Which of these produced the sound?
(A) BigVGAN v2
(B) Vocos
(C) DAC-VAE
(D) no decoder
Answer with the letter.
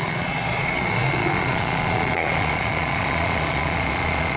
B